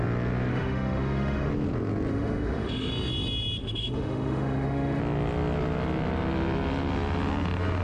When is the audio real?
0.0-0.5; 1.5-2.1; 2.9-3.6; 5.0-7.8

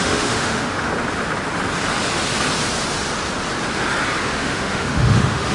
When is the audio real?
0.9-4.2

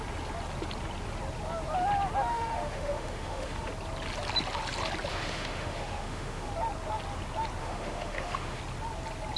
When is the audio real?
0.0-2.3; 3.7-5.1; 6.5-7.6; 8.6-9.4

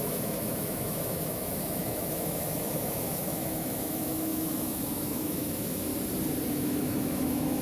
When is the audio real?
5.9-6.5